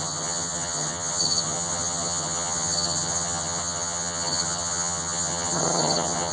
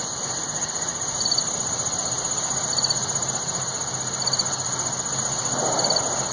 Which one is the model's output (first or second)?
first